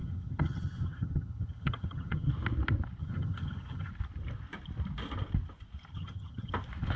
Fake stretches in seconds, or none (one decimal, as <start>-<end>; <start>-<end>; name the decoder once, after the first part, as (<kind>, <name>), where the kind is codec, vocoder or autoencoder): 0.0-2.3 (vocoder, HiFi-GAN); 3.0-3.9; 5.9-6.5